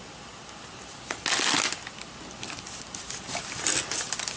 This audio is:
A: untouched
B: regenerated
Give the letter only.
A